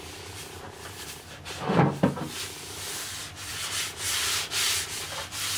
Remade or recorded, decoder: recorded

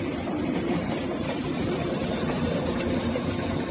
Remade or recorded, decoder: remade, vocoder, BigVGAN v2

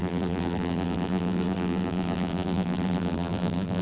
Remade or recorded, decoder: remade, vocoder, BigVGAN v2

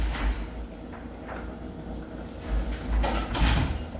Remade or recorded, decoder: recorded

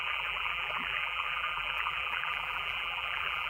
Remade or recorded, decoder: remade, vocoder, BigVGAN v2